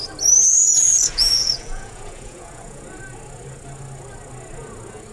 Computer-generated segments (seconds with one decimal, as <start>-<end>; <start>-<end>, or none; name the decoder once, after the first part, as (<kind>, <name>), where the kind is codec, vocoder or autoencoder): 0.6-2.8 (vocoder, Vocos)